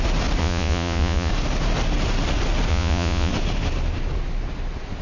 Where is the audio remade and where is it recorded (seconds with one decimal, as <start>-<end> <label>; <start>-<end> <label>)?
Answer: 0.0-0.4 recorded; 0.4-1.3 remade; 1.3-2.7 recorded; 2.7-3.3 remade; 3.3-5.0 recorded